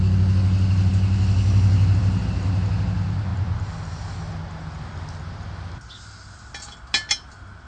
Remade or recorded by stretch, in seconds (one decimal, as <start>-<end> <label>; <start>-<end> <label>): 0.0-7.7 recorded